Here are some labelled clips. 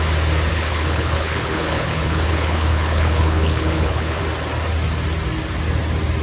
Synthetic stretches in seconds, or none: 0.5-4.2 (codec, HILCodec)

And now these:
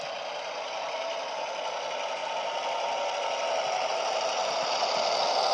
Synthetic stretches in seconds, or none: none

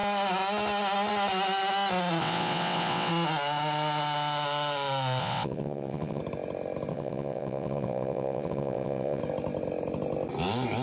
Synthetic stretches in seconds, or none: 2.2-3.1 (vocoder, WaveNeXt); 5.2-6.2; 6.9-9.2

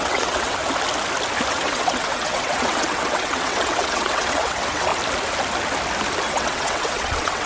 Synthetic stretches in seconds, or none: 0.0-0.6 (vocoder, WaveNeXt); 1.5-4.9; 6.3-7.5

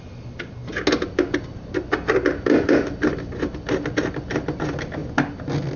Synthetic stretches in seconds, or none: none

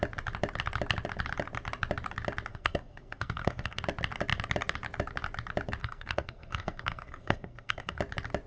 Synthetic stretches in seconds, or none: 2.5-3.8 (codec, SNAC); 5.8-8.0

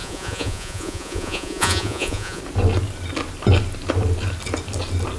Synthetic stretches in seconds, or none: 0.0-2.4 (vocoder, Vocos)

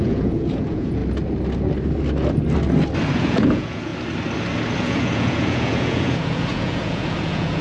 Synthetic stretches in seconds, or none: 0.0-1.0 (vocoder, Vocos); 3.1-3.9; 4.8-7.6